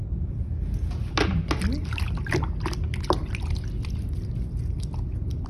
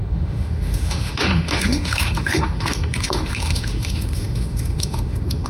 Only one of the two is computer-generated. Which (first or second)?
second